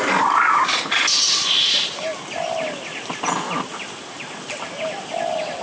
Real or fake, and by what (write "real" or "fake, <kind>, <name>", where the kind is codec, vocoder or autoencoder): real